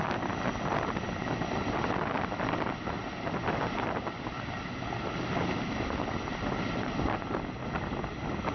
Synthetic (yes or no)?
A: no